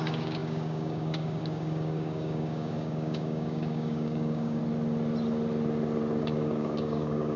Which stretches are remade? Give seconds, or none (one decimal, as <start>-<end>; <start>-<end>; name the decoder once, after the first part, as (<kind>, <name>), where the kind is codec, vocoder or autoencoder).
0.0-4.6 (codec, DAC); 6.2-7.4